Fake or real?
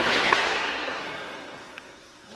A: fake